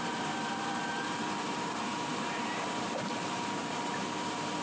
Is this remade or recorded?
remade